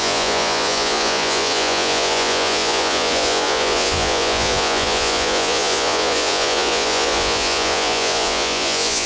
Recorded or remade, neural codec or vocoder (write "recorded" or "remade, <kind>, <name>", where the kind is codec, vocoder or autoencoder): remade, vocoder, Vocos